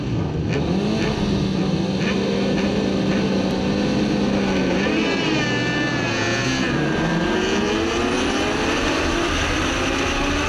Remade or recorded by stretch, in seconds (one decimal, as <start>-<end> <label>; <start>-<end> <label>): 0.0-10.5 recorded